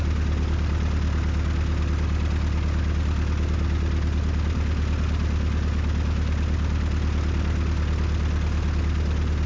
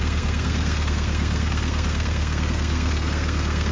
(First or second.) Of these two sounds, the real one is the first